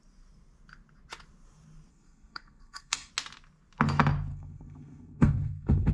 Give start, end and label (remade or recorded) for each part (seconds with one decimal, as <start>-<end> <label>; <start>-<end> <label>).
0.0-1.9 recorded; 1.9-3.1 remade; 3.1-4.3 recorded; 4.3-5.9 remade